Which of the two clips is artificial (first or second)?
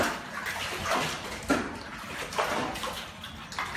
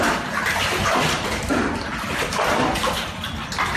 second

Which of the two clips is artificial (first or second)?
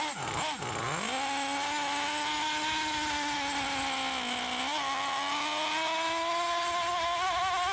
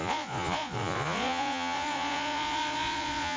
second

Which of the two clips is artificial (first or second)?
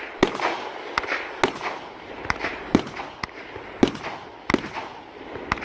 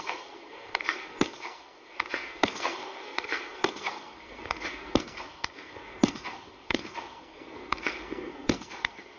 second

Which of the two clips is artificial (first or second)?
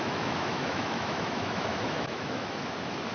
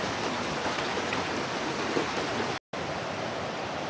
first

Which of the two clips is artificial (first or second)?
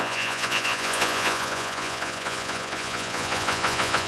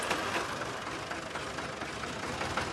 first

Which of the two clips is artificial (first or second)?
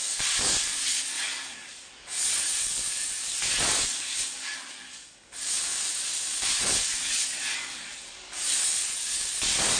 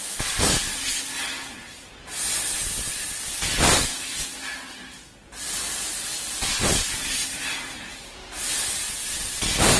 first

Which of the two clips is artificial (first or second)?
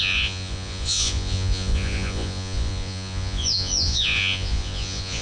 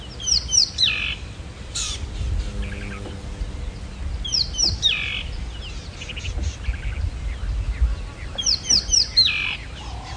first